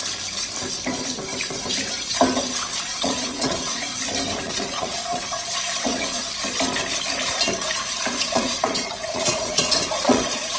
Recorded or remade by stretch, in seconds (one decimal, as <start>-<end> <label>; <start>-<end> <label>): 0.0-2.8 recorded; 2.8-3.9 remade; 3.9-4.4 recorded; 4.4-6.2 remade; 6.2-8.2 recorded; 8.2-10.6 remade